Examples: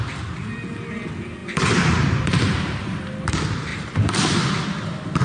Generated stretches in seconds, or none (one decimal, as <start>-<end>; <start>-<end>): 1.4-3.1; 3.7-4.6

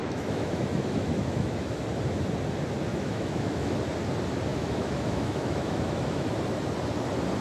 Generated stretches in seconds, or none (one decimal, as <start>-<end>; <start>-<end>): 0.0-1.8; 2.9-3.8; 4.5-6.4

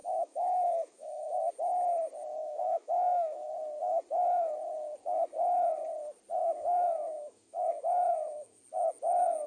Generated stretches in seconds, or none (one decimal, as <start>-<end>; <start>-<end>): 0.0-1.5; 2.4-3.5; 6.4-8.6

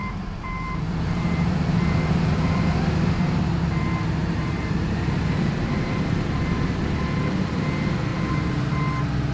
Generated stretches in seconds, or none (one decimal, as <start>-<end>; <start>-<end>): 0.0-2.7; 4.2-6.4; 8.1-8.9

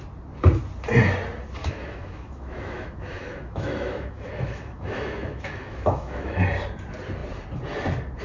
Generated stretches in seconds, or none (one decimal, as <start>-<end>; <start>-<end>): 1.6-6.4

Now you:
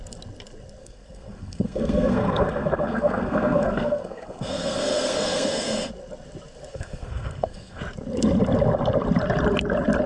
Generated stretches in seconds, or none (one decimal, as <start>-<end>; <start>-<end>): 0.8-5.9; 6.7-7.8

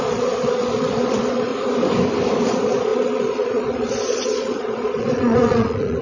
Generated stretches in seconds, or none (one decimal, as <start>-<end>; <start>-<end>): 0.0-1.5; 2.5-6.0